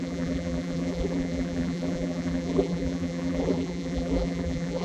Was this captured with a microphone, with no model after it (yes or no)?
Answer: no